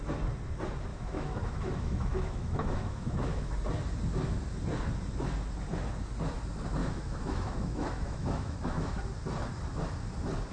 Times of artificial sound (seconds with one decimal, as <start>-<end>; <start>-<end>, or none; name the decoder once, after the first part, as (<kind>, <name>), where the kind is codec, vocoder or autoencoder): 0.9-3.5 (autoencoder, DAC-VAE); 6.8-9.0